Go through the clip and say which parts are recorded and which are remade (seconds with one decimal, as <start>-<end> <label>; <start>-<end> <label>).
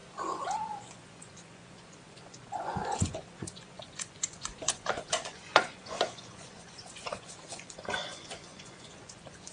0.0-9.5 remade